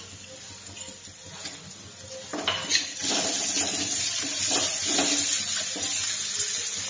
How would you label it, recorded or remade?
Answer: recorded